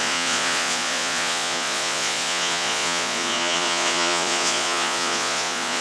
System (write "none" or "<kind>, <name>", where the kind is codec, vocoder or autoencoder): vocoder, Vocos